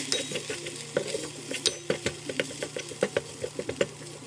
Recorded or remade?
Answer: recorded